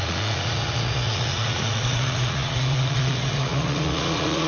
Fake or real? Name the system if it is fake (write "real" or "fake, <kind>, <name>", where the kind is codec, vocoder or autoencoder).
fake, vocoder, Vocos